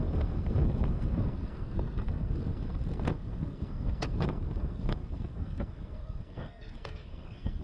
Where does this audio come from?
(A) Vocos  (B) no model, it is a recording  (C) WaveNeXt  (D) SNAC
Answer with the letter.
D